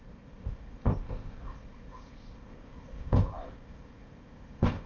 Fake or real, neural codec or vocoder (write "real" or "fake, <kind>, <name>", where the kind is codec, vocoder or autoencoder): fake, codec, ZipCodec